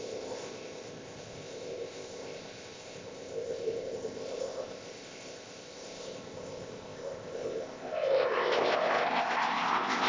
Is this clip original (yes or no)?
no